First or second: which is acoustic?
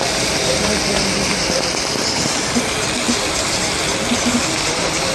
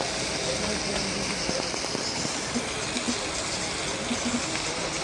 second